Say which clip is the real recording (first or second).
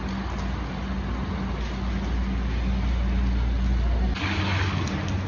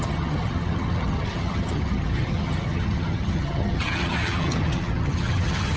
first